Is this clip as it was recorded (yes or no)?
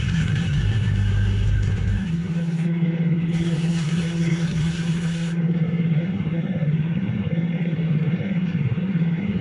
no